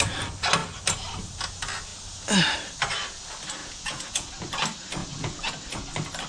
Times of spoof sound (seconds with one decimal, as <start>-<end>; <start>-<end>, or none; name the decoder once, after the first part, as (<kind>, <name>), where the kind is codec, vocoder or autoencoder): 3.6-4.3 (vocoder, Vocos); 5.0-5.5